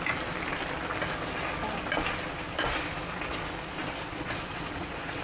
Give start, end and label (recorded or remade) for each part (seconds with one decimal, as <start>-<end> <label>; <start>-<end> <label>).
0.0-3.8 recorded; 3.8-5.2 remade